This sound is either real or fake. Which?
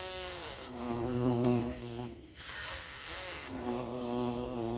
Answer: fake